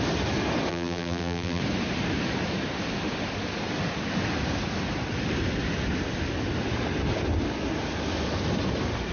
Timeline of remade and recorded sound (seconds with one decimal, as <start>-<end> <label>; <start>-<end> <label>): 0.0-0.7 recorded; 0.7-1.6 remade; 1.6-9.1 recorded